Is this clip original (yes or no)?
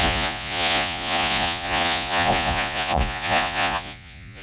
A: no